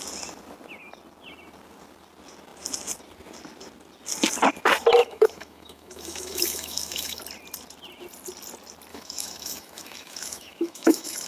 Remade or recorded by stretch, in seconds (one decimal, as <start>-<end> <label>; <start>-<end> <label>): 0.0-5.0 recorded; 5.0-7.2 remade; 7.2-8.9 recorded; 8.9-11.3 remade